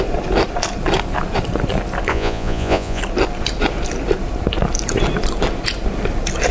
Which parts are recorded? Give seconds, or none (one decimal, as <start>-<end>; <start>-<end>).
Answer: 0.0-2.1; 3.0-6.5